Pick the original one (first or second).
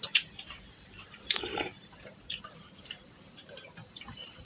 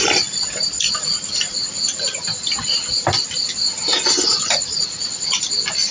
second